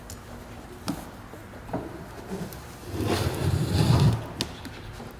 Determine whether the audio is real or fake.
real